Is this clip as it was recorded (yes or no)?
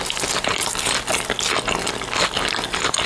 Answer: yes